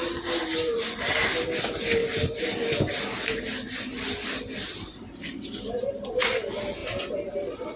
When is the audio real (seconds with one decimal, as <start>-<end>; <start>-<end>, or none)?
0.0-7.8